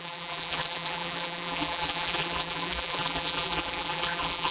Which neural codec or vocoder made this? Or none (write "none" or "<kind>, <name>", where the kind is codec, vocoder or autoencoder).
vocoder, BigVGAN v2